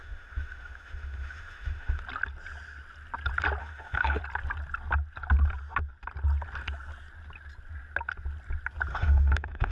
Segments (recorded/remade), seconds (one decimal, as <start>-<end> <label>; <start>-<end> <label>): 0.0-2.0 remade; 2.0-3.6 recorded; 3.6-4.2 remade; 4.2-8.9 recorded; 8.9-9.7 remade